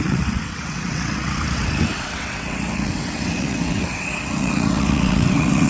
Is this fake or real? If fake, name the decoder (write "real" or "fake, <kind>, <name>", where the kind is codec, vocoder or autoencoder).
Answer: fake, vocoder, WaveNeXt